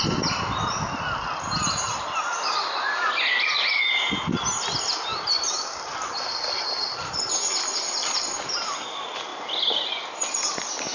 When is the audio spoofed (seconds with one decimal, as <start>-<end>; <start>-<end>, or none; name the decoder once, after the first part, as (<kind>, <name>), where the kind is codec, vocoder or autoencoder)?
1.6-4.0 (vocoder, BigVGAN v2); 5.1-8.3